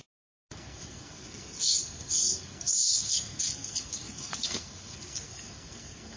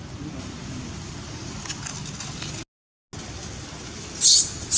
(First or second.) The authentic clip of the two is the second